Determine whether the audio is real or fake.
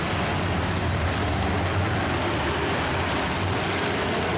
real